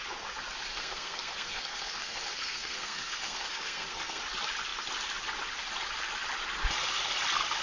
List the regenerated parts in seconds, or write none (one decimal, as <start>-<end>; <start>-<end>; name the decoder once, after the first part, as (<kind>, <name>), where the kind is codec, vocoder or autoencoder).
0.7-4.2 (codec, SNAC)